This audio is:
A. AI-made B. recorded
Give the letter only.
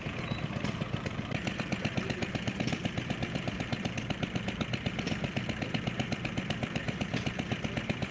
A